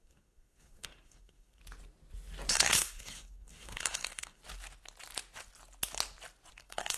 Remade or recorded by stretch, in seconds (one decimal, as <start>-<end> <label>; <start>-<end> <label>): 0.0-1.6 remade; 1.6-2.5 recorded; 2.5-4.4 remade; 4.4-6.5 recorded; 6.5-7.0 remade

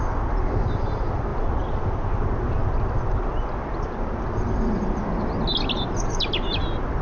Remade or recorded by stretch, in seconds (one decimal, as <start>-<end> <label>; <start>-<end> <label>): 0.0-7.0 recorded

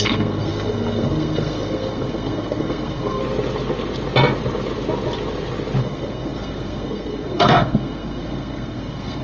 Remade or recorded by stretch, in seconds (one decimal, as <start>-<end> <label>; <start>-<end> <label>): 0.0-3.2 remade; 3.2-5.8 recorded; 5.8-9.2 remade